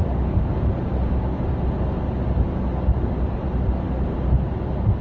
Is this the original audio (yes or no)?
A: yes